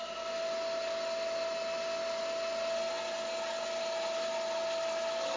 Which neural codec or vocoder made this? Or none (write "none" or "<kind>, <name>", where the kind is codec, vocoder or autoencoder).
none